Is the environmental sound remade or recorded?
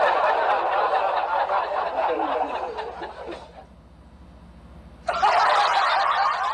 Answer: recorded